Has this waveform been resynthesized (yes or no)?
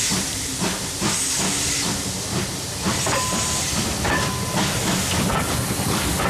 no